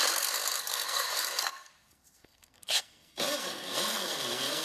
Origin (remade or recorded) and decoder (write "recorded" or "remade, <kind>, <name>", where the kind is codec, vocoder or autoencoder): remade, codec, SNAC